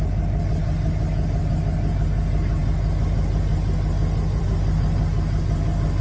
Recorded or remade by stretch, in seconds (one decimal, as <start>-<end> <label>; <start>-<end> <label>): 0.0-6.0 recorded